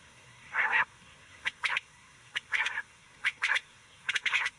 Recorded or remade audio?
remade